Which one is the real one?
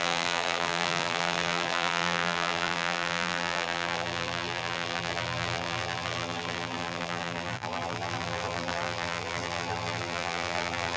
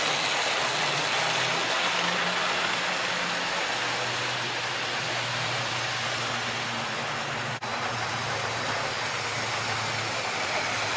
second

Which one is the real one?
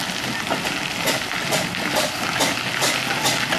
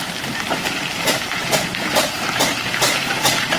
first